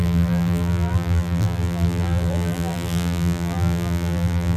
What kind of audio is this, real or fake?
fake